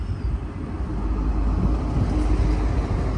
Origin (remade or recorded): recorded